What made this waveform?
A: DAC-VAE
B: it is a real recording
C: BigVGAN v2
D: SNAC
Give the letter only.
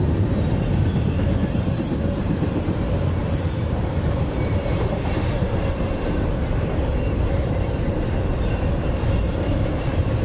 C